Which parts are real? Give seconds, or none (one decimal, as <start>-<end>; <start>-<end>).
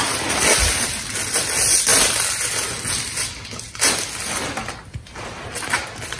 0.0-6.2